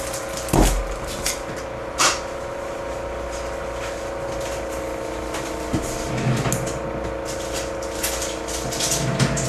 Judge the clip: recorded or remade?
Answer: recorded